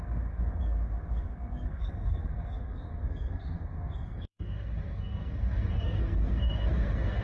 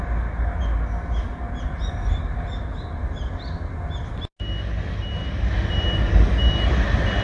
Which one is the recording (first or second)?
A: second